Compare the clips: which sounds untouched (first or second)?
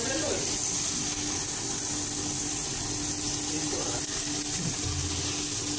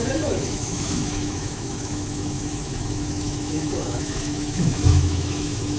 first